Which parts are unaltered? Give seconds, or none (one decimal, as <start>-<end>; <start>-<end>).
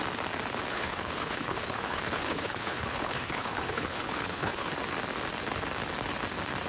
0.0-0.7; 4.7-6.7